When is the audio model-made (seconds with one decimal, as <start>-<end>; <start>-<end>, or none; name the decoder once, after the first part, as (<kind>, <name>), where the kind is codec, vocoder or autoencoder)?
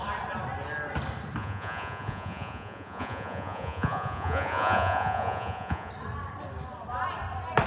1.4-5.9 (vocoder, Vocos)